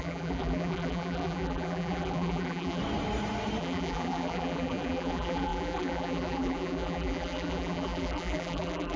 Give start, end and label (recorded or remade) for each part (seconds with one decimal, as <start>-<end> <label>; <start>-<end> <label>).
0.0-2.8 remade; 2.8-3.6 recorded; 3.6-9.0 remade